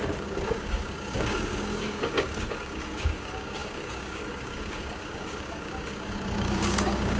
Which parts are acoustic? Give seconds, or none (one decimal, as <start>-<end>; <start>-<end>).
none